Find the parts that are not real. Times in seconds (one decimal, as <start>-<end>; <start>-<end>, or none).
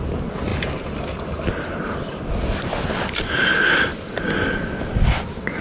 none